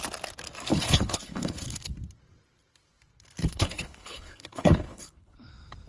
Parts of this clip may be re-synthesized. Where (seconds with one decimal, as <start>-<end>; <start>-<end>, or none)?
0.7-1.9; 3.4-5.5